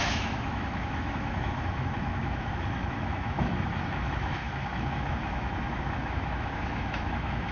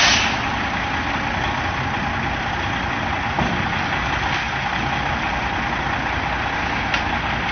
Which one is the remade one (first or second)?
first